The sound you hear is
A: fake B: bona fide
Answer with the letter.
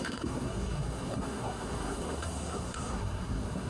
A